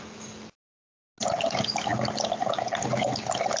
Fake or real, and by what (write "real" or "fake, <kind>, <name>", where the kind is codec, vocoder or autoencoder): real